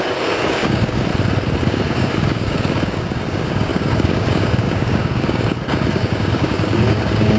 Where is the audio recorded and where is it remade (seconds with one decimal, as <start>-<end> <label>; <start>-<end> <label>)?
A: 0.0-1.1 remade; 1.1-1.6 recorded; 1.6-7.4 remade